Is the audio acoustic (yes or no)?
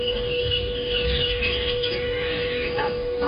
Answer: no